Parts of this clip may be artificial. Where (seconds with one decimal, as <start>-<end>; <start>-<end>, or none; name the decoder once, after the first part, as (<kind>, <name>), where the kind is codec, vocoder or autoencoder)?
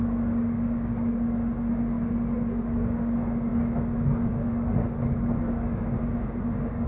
0.0-0.9 (codec, DAC); 2.6-4.8; 5.4-6.9